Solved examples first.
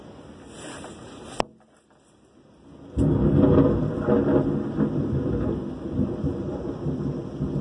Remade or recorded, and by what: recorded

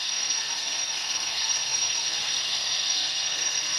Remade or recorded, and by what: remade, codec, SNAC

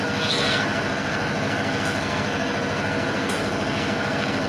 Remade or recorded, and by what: remade, codec, SNAC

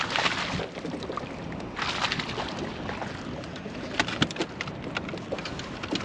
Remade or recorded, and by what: recorded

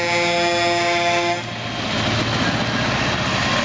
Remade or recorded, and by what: recorded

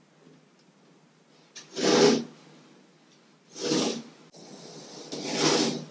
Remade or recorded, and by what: recorded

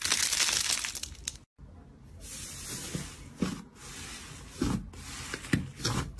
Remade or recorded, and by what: recorded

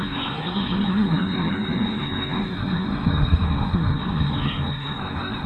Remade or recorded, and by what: remade, codec, SNAC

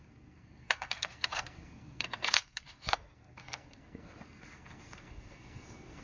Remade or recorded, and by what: remade, codec, SNAC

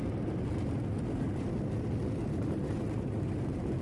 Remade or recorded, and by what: recorded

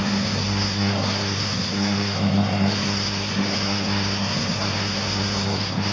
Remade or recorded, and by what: remade, codec, SNAC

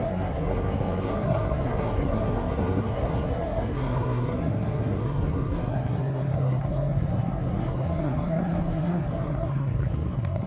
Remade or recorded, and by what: remade, codec, SNAC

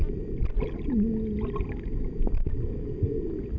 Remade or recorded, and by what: recorded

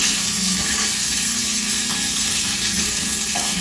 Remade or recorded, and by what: remade, codec, SNAC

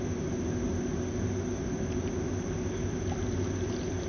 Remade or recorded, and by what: recorded